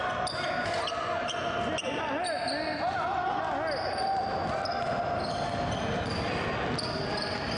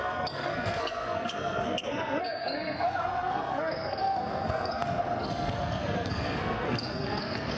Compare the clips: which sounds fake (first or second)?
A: second